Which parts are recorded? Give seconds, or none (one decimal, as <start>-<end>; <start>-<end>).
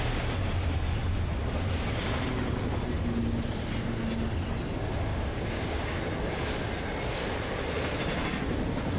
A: 0.0-5.1; 6.0-9.0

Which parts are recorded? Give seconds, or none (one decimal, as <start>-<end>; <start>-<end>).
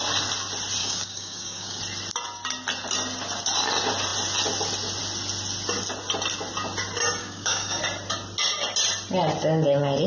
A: 0.0-0.8; 1.8-7.2; 7.8-10.1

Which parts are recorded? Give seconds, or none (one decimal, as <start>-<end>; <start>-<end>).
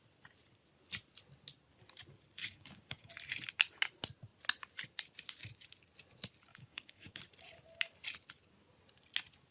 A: 0.0-2.4; 3.1-6.5; 7.2-9.5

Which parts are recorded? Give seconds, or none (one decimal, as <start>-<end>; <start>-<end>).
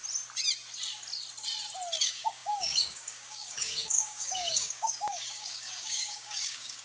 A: 0.0-2.0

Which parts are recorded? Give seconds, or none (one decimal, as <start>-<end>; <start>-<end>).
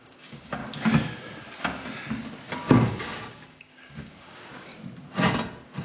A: 0.6-2.7; 4.7-5.8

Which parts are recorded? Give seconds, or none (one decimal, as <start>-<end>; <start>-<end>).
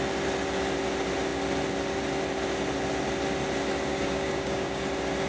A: 0.0-3.9; 4.8-5.3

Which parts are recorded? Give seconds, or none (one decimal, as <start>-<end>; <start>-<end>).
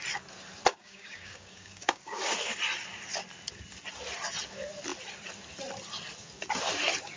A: 0.0-0.8; 2.2-7.2